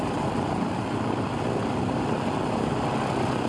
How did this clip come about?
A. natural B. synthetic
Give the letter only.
A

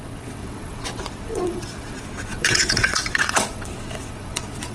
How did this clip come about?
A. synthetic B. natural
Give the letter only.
A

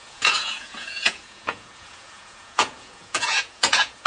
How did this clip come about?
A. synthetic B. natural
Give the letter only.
A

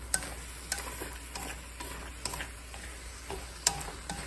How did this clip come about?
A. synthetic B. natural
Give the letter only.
B